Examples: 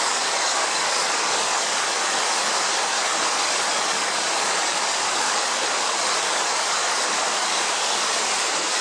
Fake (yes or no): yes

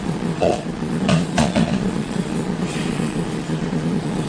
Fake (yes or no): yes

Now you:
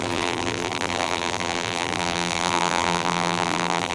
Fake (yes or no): yes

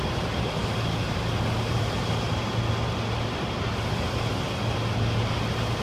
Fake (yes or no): no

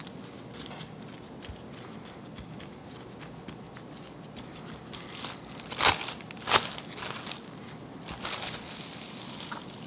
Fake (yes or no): no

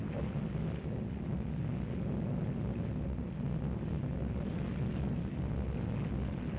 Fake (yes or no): no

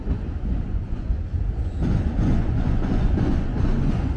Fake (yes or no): yes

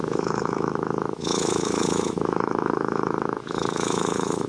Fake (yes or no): yes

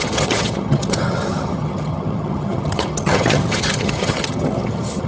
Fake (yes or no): yes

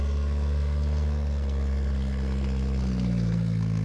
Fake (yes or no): yes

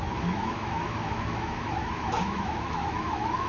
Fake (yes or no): yes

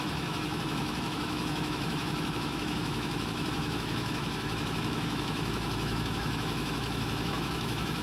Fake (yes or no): yes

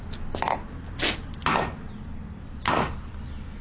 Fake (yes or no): no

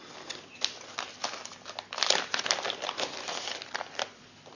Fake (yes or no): no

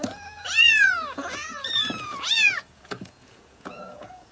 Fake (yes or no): yes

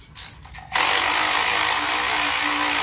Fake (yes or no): no